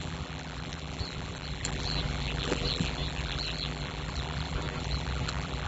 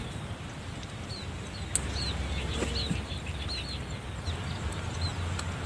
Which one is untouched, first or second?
second